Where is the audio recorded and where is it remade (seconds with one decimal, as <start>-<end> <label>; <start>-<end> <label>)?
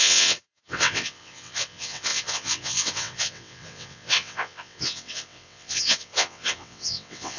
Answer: 0.0-7.4 remade